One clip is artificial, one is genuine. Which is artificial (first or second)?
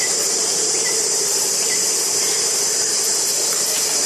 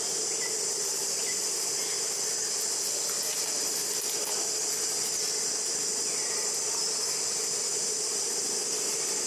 first